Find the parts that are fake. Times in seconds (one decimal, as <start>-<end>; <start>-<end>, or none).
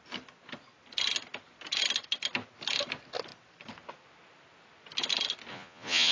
5.5-6.1